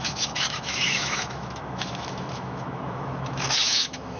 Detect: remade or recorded remade